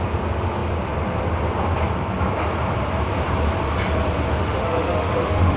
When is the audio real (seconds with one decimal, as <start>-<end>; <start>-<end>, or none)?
0.0-4.3